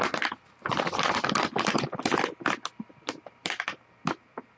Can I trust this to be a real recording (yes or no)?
yes